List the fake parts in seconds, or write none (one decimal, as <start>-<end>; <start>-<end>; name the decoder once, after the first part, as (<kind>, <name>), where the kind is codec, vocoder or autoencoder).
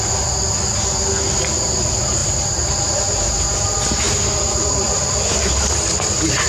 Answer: 2.2-3.3 (vocoder, BigVGAN v2)